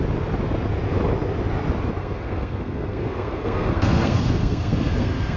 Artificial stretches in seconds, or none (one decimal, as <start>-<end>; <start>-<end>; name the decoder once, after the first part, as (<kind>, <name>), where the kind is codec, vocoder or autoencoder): 2.0-5.4 (codec, SNAC)